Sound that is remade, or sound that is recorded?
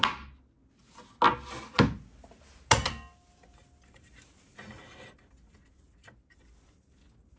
recorded